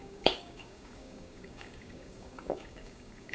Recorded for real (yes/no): no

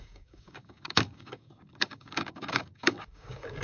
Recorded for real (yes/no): no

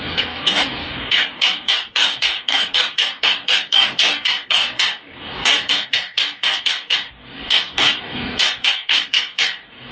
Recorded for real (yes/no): no